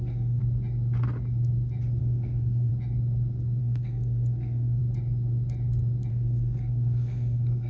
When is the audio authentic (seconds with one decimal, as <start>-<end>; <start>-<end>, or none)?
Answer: 0.4-2.0; 2.7-3.6; 4.8-6.1